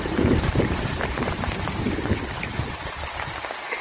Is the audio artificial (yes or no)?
no